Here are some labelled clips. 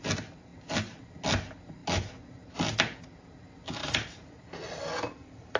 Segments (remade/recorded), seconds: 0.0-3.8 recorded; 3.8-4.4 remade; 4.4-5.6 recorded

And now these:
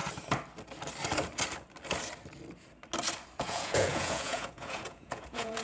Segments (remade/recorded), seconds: 0.0-3.4 recorded; 3.4-5.6 remade

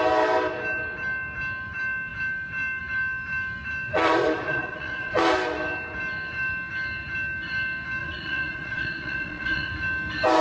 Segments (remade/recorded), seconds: 0.0-3.9 recorded; 3.9-5.3 remade; 5.3-8.0 recorded; 8.0-9.7 remade; 9.7-10.4 recorded

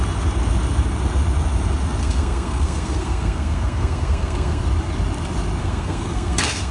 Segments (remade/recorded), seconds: 0.0-2.0 recorded; 2.0-4.6 remade; 4.6-5.6 recorded; 5.6-6.7 remade